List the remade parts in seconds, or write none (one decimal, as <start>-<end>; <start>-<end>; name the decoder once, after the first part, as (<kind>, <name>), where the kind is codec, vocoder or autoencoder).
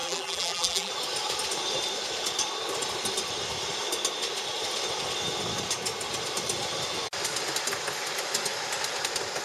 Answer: 0.0-0.9 (vocoder, BigVGAN v2)